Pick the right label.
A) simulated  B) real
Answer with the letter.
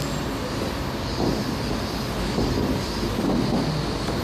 B